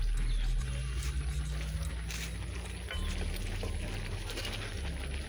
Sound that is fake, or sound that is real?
real